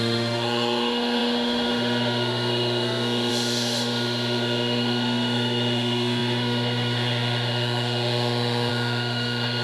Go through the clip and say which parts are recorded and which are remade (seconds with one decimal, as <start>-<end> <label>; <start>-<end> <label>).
0.0-9.6 remade